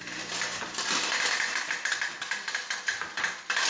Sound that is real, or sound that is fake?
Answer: real